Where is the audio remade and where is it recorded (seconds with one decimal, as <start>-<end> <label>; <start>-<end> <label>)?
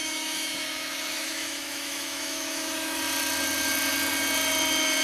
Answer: 0.0-3.0 remade; 3.0-5.0 recorded